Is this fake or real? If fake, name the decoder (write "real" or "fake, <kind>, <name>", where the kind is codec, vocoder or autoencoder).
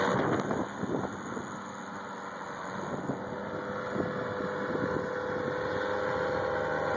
real